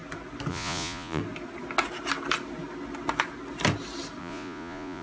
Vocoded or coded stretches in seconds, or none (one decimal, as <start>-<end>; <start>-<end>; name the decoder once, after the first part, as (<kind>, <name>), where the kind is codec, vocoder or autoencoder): 0.5-1.2 (vocoder, Vocos); 4.2-5.0